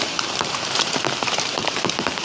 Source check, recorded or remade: remade